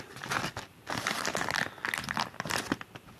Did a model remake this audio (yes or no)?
no